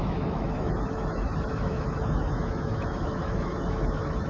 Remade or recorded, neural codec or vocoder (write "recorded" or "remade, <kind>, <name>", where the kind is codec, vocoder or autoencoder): remade, autoencoder, DAC-VAE